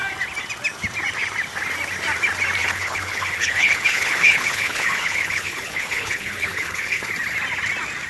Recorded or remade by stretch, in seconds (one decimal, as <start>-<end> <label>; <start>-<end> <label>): 0.0-2.6 recorded; 2.6-7.1 remade; 7.1-8.1 recorded